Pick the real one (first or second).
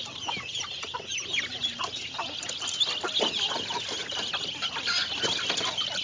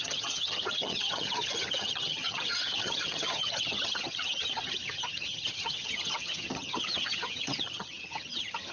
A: first